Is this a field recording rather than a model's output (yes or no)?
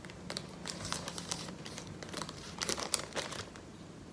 no